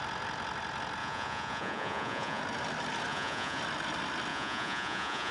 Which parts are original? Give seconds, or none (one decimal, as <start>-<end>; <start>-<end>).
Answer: 0.0-1.0; 2.4-3.1; 3.6-4.3